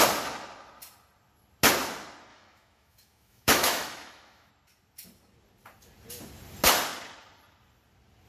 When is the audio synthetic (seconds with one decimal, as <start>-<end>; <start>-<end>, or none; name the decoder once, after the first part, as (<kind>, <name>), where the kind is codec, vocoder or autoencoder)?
2.3-4.5 (autoencoder, DAC-VAE)